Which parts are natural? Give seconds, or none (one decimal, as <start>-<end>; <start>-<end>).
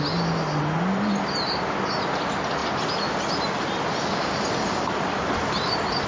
0.0-6.1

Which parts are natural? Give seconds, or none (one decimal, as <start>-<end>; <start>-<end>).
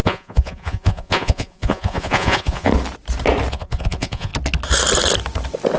2.7-3.5; 4.3-5.8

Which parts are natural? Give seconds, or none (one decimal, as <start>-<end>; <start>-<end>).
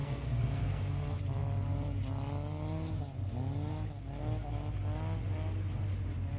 0.9-6.4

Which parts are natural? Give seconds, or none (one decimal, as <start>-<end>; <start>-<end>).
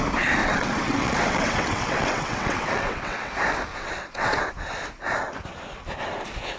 0.0-0.4; 3.3-3.7; 4.4-6.6